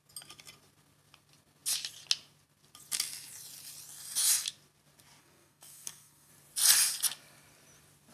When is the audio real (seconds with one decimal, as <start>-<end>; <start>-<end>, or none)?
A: 0.0-5.2; 6.3-8.1